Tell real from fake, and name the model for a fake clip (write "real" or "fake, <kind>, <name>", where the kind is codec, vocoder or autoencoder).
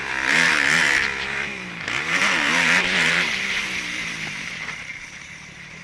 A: fake, vocoder, BigVGAN v2